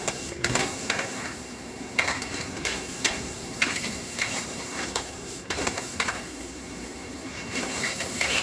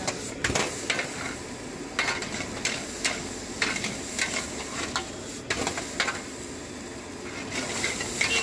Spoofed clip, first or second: first